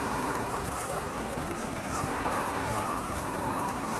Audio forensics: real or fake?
fake